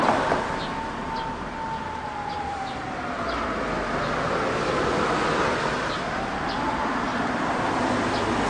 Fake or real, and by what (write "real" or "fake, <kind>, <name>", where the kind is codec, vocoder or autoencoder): real